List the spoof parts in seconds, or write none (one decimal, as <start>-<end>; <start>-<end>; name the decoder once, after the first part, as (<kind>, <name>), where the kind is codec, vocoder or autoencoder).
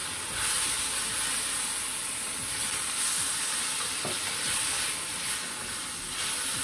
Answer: none